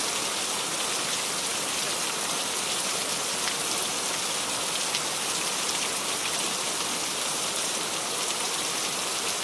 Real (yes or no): no